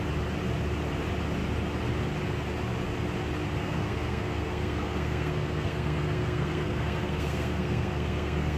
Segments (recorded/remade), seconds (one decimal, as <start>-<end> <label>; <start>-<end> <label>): 0.0-3.6 recorded; 3.6-8.6 remade